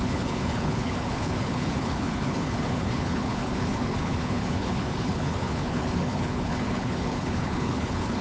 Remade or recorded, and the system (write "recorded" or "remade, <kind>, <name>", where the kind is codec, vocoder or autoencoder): remade, codec, HILCodec